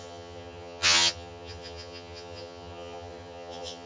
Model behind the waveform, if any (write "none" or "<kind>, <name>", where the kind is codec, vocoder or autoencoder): vocoder, HiFi-GAN